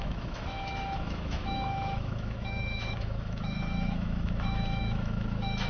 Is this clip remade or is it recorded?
remade